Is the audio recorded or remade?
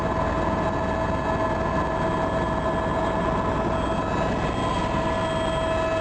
recorded